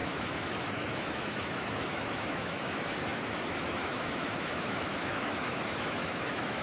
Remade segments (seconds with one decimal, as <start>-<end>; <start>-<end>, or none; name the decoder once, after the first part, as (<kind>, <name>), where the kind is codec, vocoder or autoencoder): 0.0-6.6 (autoencoder, DAC-VAE)